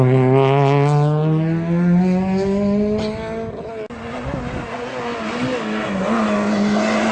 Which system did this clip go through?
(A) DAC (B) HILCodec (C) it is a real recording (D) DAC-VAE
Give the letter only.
C